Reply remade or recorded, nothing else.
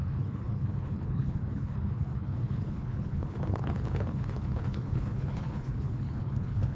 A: remade